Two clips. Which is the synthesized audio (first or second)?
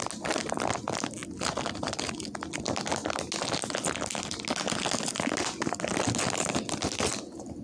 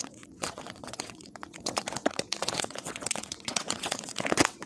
second